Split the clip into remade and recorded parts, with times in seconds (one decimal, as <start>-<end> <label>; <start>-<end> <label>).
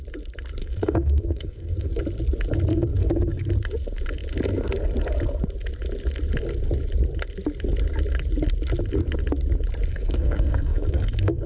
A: 0.0-0.6 recorded; 0.6-2.0 remade; 2.0-2.7 recorded; 2.7-3.5 remade; 3.5-9.9 recorded; 9.9-11.5 remade